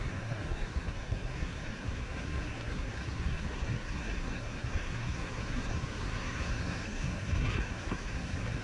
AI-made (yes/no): yes